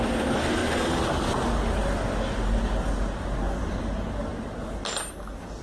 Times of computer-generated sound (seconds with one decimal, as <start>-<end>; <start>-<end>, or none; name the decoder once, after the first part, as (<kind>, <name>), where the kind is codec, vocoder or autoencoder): none